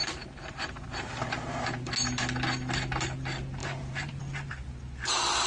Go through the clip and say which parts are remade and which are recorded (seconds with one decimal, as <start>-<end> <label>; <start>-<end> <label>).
0.0-1.9 remade; 1.9-3.6 recorded; 3.6-4.2 remade; 4.2-5.5 recorded